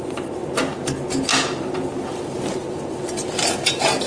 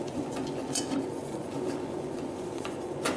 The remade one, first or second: second